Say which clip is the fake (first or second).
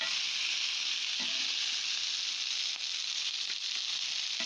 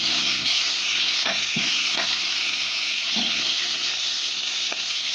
second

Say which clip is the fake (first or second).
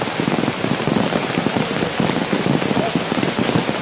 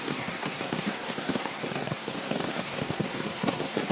second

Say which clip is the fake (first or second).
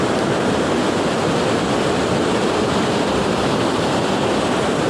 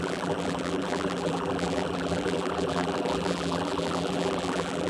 second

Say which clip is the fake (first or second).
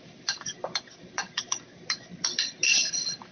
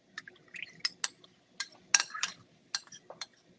first